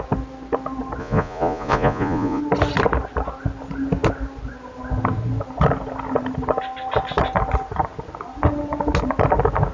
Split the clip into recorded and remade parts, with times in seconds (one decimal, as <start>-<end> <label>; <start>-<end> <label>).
0.0-1.0 recorded; 1.0-2.4 remade; 2.4-9.7 recorded